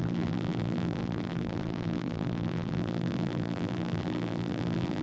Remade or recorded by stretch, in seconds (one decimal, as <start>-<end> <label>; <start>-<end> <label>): 0.0-5.0 remade

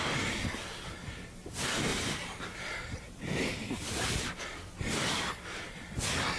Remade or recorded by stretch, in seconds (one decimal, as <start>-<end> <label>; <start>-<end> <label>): 0.0-1.9 recorded; 1.9-4.4 remade; 4.4-6.4 recorded

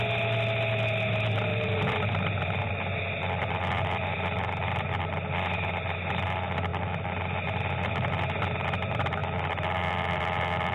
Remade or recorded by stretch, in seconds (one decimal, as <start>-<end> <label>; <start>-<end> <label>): 0.0-1.5 recorded; 1.5-2.7 remade; 2.7-10.7 recorded

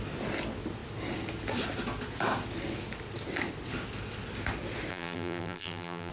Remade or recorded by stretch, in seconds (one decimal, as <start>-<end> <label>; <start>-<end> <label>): 0.0-4.9 recorded; 4.9-6.1 remade